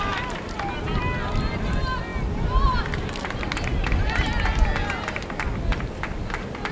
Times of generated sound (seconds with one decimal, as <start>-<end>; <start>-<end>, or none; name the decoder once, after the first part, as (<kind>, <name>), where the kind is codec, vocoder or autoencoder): none